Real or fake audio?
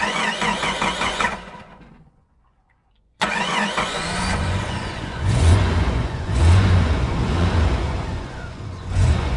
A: fake